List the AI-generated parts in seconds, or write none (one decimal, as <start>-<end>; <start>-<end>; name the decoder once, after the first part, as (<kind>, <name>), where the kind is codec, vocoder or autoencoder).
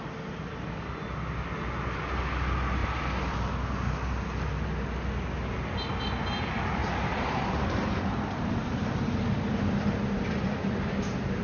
6.8-8.5 (vocoder, BigVGAN v2)